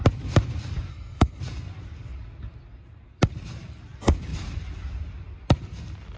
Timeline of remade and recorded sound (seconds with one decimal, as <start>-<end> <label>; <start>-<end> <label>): 0.0-0.9 recorded; 0.9-1.4 remade; 1.4-6.2 recorded